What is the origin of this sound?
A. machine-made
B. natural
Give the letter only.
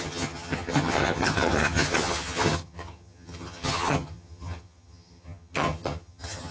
A